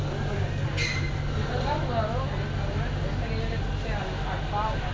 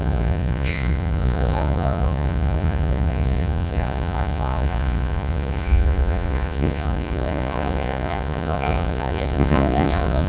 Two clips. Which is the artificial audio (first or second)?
second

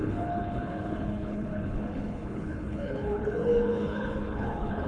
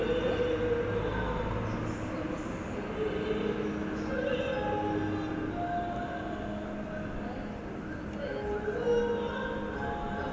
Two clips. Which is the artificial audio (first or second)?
first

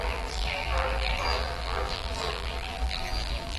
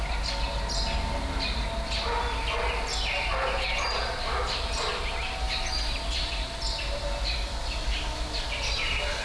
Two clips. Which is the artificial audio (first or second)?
first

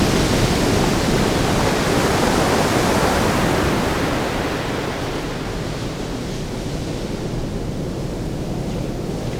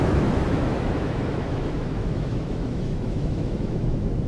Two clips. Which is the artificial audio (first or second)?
second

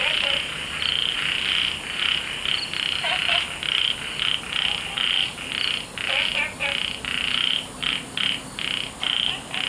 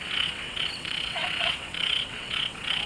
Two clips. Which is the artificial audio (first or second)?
second